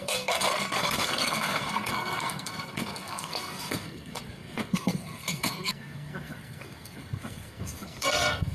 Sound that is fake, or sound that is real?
fake